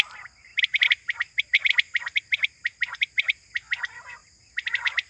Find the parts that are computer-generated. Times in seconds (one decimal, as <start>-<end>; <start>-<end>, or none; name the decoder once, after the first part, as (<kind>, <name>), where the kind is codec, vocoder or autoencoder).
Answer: none